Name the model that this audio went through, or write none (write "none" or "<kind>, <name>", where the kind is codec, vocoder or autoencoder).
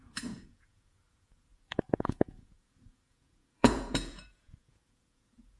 vocoder, Vocos